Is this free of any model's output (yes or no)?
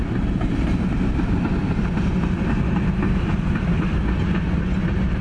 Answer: yes